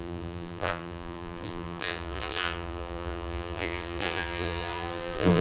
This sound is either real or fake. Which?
fake